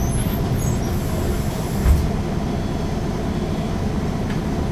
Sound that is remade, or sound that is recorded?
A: recorded